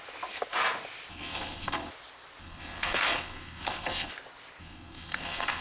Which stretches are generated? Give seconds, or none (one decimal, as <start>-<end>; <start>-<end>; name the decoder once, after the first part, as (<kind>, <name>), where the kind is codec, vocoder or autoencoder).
1.1-1.9 (codec, SNAC); 2.4-4.1; 4.6-5.6